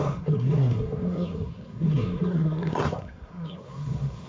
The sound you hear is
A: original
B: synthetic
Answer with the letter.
B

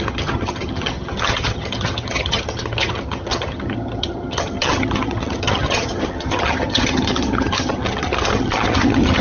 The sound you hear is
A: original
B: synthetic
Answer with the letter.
B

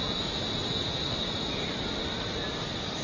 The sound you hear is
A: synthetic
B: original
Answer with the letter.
B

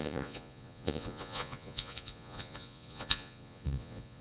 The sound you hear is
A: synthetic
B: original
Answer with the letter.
A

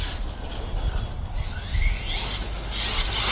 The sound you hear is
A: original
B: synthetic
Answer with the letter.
A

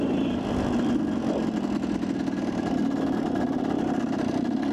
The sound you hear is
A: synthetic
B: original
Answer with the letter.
B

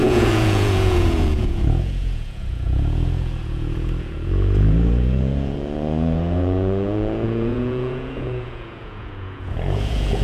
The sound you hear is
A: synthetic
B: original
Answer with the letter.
A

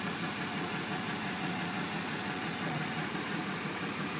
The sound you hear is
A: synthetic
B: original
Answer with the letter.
A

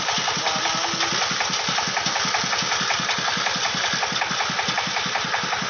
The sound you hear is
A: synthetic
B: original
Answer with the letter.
B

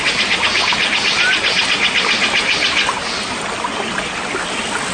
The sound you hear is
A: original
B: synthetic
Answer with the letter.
A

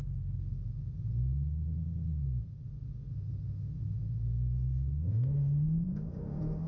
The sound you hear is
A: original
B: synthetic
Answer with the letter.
B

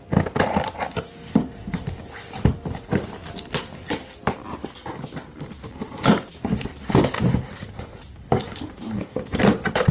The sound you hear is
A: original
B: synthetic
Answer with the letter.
A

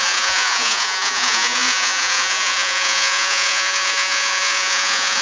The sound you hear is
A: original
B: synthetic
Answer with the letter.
B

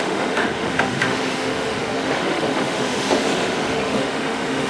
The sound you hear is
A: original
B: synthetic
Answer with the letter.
B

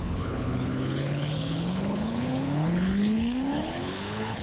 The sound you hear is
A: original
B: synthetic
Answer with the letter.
B